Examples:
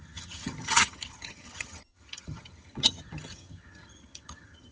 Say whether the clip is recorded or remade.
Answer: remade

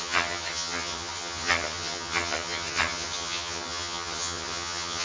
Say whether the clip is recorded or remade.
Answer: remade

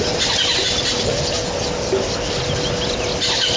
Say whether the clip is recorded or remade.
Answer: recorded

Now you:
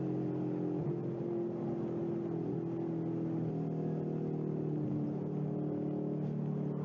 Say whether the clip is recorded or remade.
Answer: recorded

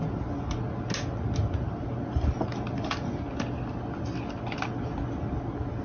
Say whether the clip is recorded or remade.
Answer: recorded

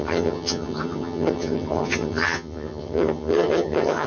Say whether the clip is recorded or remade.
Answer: remade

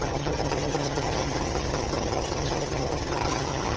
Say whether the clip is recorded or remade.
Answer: remade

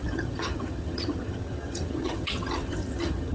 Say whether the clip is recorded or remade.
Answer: remade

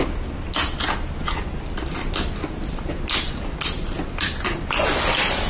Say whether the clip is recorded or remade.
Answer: recorded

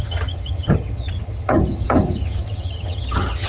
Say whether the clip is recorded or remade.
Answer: remade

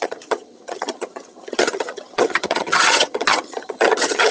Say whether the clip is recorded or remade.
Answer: remade